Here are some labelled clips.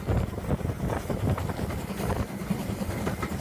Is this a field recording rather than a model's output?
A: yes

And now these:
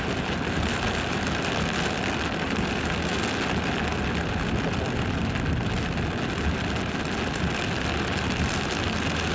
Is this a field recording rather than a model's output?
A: yes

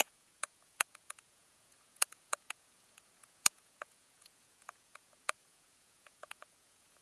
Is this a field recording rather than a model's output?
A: no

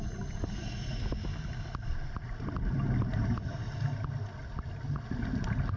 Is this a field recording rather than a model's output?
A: yes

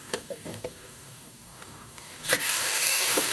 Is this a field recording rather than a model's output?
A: no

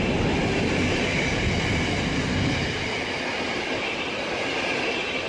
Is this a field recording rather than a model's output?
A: yes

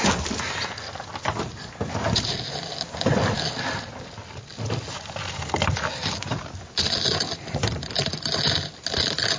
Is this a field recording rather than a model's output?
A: yes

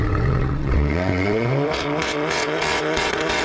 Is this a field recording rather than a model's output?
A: no